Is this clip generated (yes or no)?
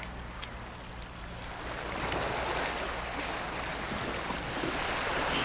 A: no